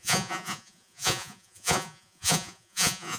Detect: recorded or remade remade